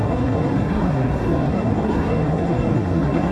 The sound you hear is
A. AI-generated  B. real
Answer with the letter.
A